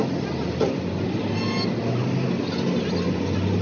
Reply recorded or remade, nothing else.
recorded